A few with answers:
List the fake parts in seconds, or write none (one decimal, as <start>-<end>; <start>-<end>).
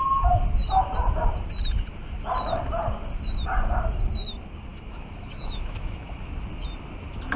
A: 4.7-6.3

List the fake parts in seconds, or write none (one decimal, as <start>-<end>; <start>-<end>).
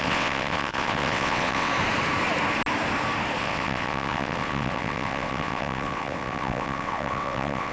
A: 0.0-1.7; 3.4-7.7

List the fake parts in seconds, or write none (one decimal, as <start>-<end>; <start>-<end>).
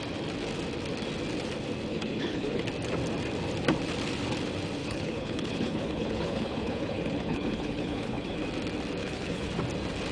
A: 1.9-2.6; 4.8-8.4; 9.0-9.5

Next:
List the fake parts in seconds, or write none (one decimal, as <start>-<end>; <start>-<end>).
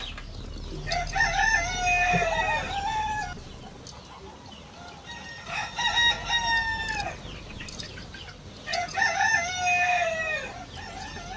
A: 8.7-9.3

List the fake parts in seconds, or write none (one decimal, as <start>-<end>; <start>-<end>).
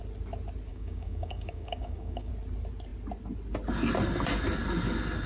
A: 0.7-2.3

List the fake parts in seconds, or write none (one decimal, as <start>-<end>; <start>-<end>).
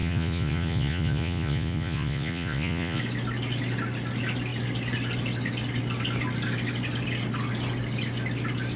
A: 0.0-3.0